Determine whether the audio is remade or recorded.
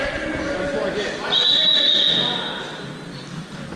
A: recorded